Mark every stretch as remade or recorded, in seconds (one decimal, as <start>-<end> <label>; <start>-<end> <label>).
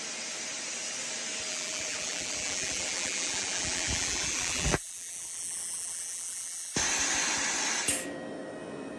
0.0-1.5 recorded; 1.5-6.7 remade; 6.7-9.0 recorded